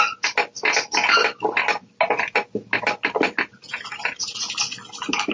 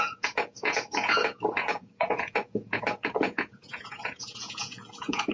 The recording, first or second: first